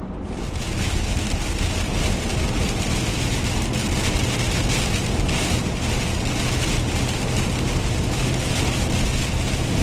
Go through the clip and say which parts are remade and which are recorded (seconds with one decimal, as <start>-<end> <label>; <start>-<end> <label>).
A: 0.0-9.8 recorded